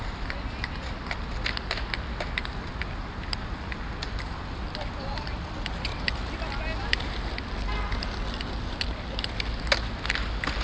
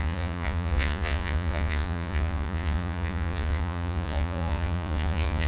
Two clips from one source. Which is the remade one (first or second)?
second